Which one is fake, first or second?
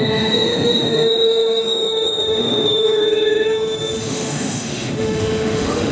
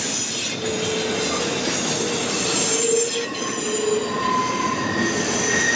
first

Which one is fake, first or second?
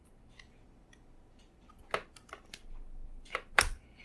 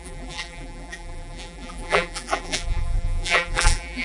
second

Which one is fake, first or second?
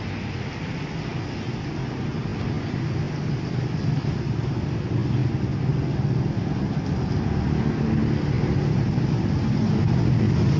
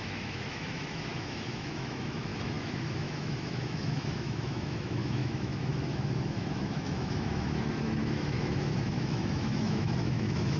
second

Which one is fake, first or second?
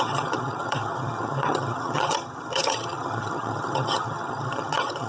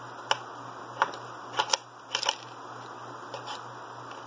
first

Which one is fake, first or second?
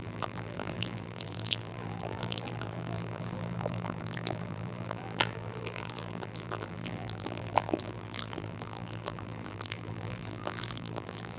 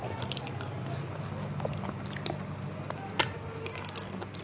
first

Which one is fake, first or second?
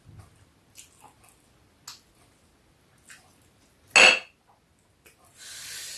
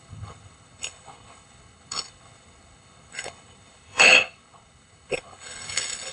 second